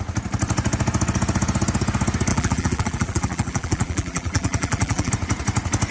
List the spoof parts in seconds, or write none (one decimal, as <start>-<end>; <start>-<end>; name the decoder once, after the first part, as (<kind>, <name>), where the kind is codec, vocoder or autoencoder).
2.3-5.1 (vocoder, BigVGAN v2)